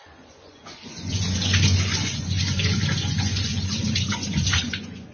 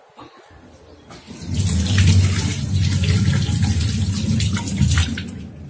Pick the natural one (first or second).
second